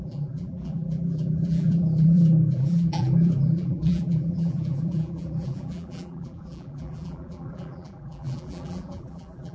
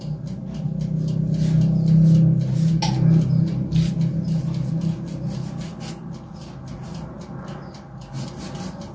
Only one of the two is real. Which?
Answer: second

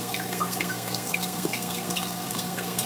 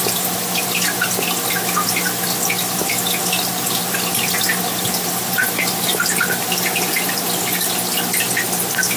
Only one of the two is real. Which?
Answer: second